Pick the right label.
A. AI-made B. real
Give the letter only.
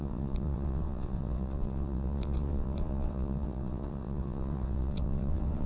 A